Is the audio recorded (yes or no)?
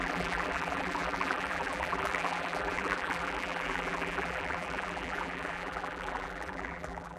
no